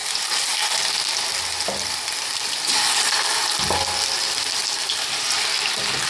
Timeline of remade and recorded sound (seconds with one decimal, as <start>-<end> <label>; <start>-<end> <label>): 0.0-6.1 recorded